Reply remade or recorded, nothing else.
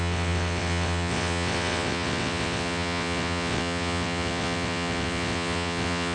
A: remade